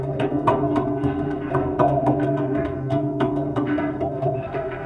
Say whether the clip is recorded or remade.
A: remade